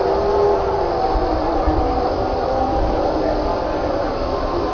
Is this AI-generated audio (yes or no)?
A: no